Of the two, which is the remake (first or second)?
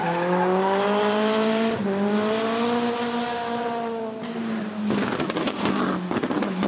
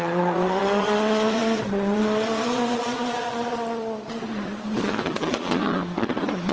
second